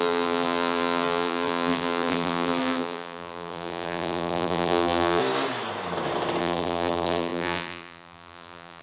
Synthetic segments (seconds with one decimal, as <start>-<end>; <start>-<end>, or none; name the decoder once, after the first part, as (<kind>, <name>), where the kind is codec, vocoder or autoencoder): 0.0-5.2 (vocoder, BigVGAN v2); 6.4-8.8